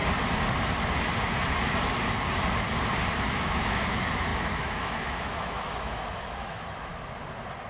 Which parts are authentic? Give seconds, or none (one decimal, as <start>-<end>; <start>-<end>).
0.0-3.3; 6.9-7.7